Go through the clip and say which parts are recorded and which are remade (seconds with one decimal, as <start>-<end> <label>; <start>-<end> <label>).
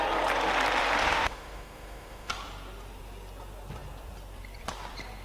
0.0-1.0 recorded; 1.0-2.3 remade; 2.3-5.2 recorded